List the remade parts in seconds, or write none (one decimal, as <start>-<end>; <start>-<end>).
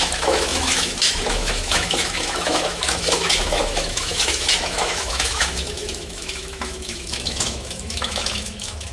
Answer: 0.0-8.9